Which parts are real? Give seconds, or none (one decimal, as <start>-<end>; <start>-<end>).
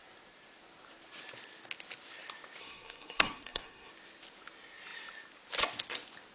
0.0-2.6; 3.9-6.3